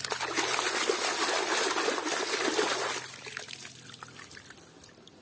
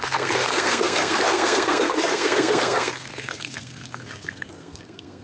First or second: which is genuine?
first